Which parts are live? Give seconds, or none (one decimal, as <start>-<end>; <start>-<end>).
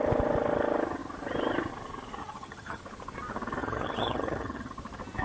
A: 0.0-2.2; 2.8-3.6; 4.7-5.2